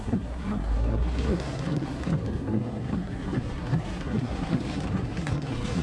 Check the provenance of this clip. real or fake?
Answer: fake